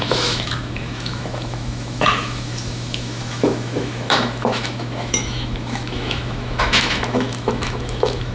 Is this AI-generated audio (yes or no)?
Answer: yes